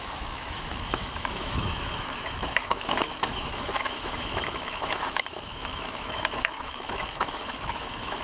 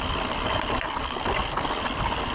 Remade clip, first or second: first